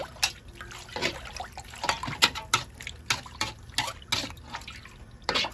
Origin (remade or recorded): recorded